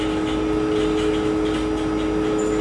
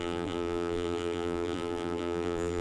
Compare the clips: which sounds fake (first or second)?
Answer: second